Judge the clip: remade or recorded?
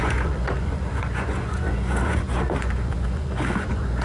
remade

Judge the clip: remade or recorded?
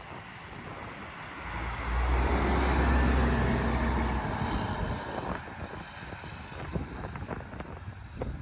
recorded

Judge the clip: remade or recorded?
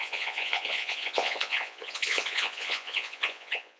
remade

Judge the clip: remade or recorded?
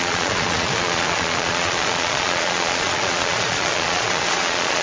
remade